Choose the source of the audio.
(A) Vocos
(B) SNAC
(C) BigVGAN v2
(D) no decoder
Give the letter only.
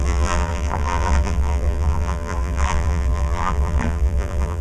C